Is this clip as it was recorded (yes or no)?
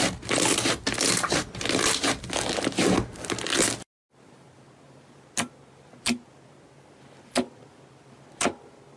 yes